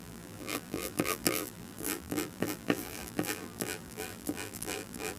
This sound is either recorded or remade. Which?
remade